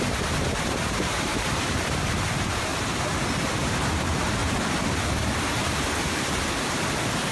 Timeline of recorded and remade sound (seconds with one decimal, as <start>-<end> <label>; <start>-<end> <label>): 0.0-2.7 remade; 2.7-3.7 recorded; 3.7-4.4 remade; 4.4-7.3 recorded